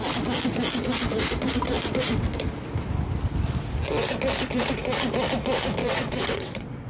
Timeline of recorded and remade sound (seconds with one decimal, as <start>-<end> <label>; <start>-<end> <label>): 0.0-5.8 recorded; 5.8-6.9 remade